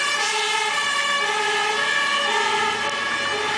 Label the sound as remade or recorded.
recorded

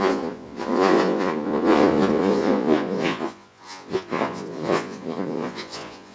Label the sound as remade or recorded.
remade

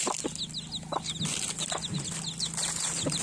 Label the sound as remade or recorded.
recorded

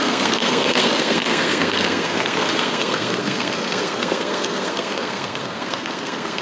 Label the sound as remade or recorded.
remade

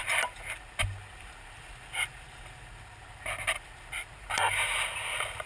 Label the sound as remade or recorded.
recorded